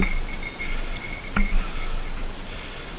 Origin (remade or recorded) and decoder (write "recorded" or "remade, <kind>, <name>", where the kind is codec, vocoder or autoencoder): recorded